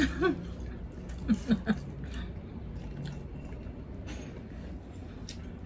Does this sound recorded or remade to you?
recorded